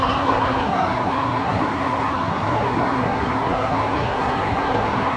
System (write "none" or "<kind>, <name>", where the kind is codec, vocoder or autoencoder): codec, SNAC